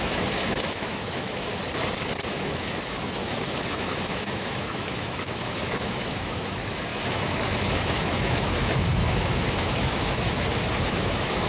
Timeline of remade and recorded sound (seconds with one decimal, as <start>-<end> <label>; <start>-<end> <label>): 0.0-1.5 remade; 1.5-2.3 recorded; 2.3-11.5 remade